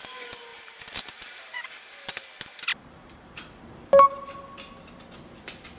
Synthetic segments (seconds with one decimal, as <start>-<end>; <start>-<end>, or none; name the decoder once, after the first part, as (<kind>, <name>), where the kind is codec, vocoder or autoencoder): 0.5-1.9 (vocoder, BigVGAN v2); 2.7-3.6